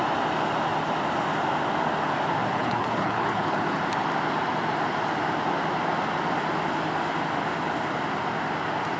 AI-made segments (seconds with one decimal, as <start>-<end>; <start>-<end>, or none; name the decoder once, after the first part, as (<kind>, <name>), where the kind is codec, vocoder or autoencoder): 2.6-3.8 (codec, HILCodec)